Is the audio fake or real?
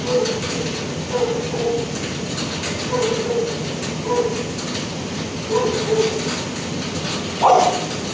real